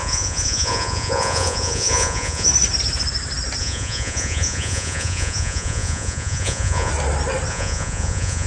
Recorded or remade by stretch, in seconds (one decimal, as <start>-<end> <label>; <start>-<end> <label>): 0.0-2.5 remade; 2.5-3.6 recorded; 3.6-6.9 remade; 6.9-7.5 recorded; 7.5-8.5 remade